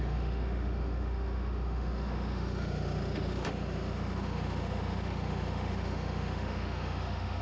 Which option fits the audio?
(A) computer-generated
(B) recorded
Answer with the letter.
A